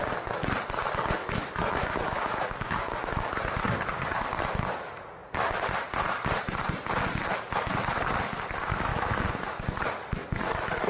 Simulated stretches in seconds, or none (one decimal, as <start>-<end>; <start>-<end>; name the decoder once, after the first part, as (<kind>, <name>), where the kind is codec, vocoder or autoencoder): 1.2-3.6 (autoencoder, DAC-VAE); 8.9-9.6